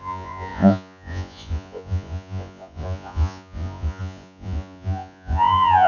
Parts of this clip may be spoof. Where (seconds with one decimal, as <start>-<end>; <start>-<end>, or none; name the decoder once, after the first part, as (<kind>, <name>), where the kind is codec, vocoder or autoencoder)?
0.0-5.9 (vocoder, Vocos)